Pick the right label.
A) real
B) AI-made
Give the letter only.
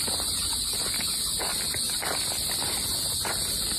A